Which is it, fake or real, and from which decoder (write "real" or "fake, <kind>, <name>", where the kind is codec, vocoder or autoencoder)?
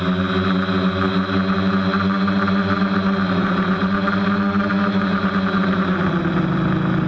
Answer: real